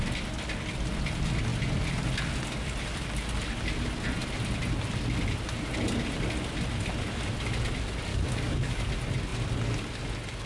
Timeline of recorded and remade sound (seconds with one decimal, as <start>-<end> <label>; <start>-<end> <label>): 0.0-8.1 recorded; 8.1-8.9 remade; 8.9-10.5 recorded